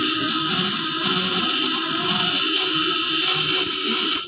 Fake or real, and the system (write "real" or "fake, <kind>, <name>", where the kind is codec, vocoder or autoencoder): real